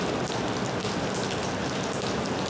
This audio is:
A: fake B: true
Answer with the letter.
B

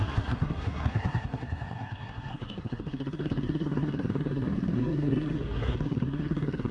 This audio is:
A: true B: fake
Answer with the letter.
B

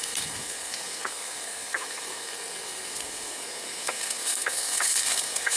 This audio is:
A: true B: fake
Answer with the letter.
B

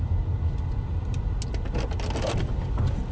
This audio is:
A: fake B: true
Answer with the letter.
B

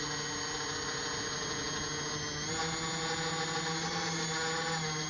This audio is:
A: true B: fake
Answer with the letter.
A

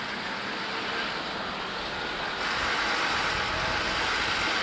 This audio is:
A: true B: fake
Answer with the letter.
A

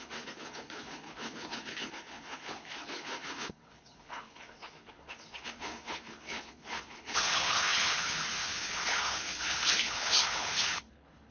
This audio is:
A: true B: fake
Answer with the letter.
B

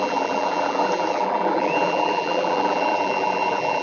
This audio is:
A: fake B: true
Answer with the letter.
A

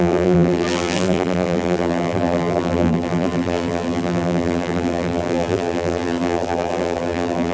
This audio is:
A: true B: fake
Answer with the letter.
B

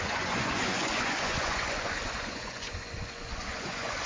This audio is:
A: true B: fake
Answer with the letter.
B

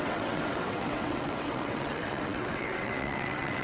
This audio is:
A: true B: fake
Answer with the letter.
B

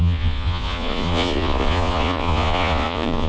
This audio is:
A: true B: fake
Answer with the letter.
B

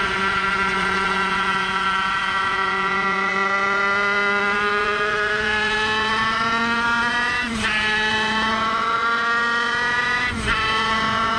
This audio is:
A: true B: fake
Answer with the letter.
B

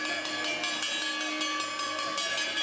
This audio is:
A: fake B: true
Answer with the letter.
B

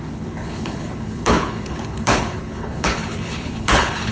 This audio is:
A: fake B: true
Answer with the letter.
A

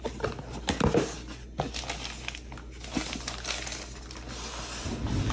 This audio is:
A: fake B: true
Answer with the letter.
B